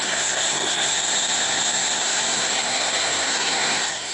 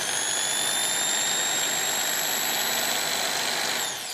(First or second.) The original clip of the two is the second